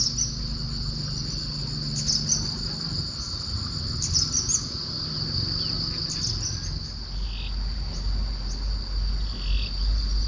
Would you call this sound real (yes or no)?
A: yes